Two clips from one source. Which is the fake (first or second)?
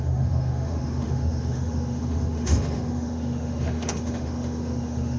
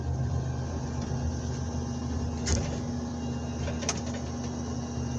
first